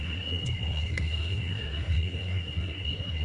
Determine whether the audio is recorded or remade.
remade